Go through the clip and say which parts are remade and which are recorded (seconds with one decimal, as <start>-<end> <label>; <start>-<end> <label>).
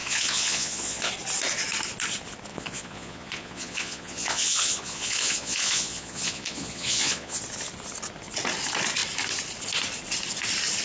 0.0-1.1 remade; 1.1-2.5 recorded; 2.5-7.4 remade; 7.4-10.8 recorded